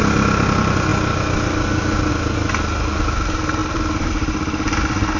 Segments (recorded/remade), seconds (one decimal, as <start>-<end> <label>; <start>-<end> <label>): 0.0-3.6 recorded; 3.6-4.1 remade; 4.1-5.2 recorded